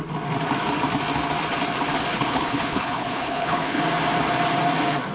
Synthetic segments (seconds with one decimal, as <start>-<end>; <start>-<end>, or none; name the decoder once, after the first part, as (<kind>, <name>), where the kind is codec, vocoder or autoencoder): 2.1-3.8 (codec, HILCodec)